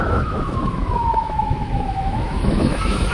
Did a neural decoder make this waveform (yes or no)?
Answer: yes